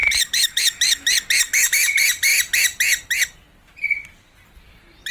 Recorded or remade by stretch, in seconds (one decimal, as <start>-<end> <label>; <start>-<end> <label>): 0.0-1.7 recorded; 1.7-2.3 remade; 2.3-5.1 recorded